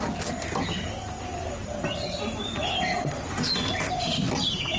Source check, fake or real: real